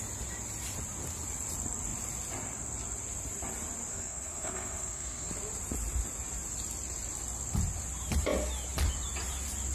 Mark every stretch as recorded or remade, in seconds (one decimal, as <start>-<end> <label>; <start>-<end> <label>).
0.0-3.9 recorded; 3.9-5.3 remade; 5.3-9.7 recorded